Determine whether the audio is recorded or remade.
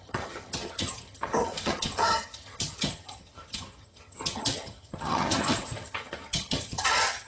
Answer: remade